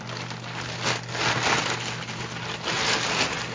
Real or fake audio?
real